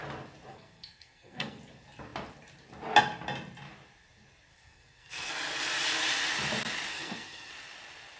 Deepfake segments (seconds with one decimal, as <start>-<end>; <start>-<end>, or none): 0.5-1.6; 4.5-5.3; 6.9-7.5